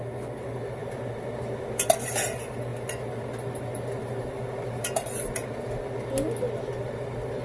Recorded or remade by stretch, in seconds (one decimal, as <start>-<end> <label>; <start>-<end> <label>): 0.0-7.4 recorded